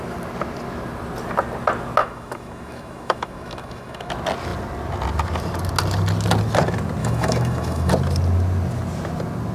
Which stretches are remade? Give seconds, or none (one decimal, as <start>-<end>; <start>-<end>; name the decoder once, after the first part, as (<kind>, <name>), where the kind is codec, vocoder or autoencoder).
2.0-4.1 (autoencoder, DAC-VAE); 7.0-7.9